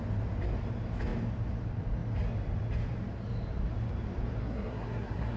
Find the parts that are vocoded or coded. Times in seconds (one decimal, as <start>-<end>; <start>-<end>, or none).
4.4-5.4